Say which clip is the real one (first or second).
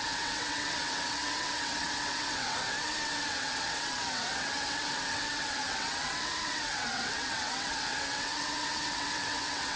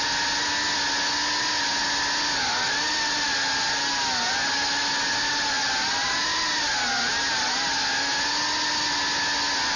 second